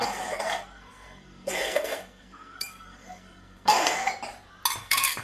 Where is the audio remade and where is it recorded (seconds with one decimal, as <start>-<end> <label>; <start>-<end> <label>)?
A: 0.0-4.1 remade; 4.1-4.8 recorded; 4.8-5.2 remade